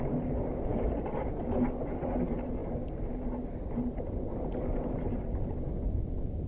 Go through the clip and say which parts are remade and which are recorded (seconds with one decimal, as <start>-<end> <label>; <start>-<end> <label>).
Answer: 0.0-0.7 recorded; 0.7-1.2 remade; 1.2-6.5 recorded